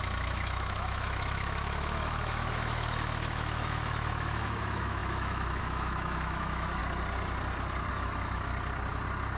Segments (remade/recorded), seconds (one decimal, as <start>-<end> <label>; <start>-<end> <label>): 0.0-6.8 remade; 6.8-7.9 recorded; 7.9-8.5 remade; 8.5-9.4 recorded